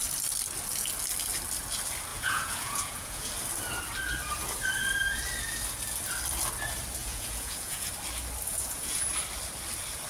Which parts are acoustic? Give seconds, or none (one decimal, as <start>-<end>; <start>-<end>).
0.0-2.1; 3.3-7.0; 7.9-8.5; 9.1-10.1

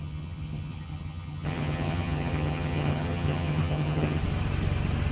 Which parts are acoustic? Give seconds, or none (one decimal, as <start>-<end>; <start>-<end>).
4.2-5.1

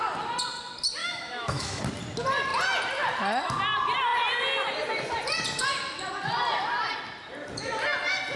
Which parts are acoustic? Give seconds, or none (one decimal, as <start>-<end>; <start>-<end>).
0.0-1.0; 1.8-8.4